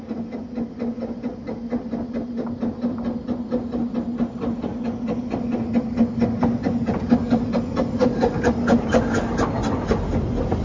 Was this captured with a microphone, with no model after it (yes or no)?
yes